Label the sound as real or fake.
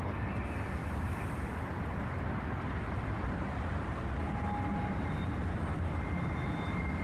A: real